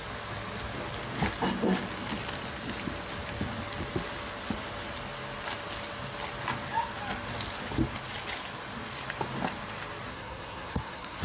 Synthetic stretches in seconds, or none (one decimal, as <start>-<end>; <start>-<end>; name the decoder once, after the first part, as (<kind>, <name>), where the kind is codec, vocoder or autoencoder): 10.1-11.2 (codec, SNAC)